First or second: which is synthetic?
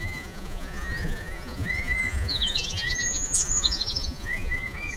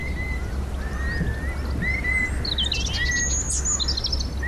first